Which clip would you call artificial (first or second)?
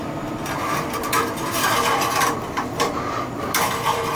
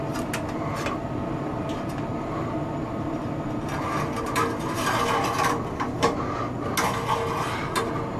first